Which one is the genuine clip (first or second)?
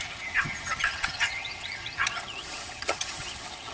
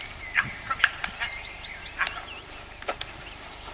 second